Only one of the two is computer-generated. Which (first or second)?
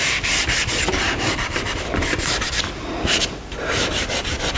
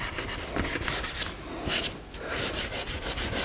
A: first